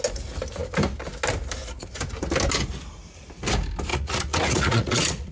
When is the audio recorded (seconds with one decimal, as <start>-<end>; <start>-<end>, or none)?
0.0-3.9

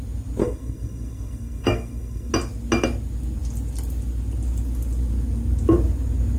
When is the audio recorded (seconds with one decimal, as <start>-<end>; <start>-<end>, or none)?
0.0-0.4; 2.3-6.4

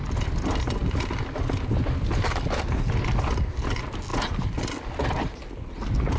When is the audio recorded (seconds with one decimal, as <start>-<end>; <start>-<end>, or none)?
0.0-6.2

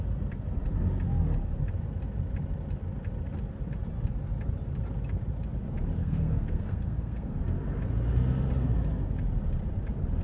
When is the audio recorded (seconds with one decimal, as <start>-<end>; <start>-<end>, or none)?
0.0-6.0; 7.4-10.2

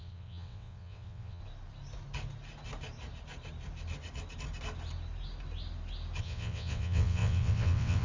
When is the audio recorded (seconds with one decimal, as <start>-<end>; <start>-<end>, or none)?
1.4-6.2

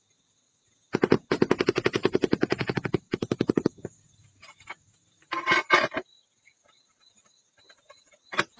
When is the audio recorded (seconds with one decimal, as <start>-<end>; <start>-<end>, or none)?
0.0-2.0; 5.5-8.6

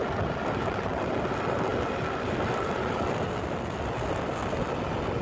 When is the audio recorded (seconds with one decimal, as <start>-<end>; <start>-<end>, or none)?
0.0-5.2